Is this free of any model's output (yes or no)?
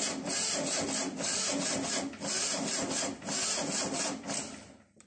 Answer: yes